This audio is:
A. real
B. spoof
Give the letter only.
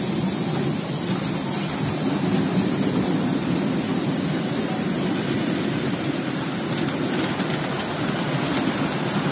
A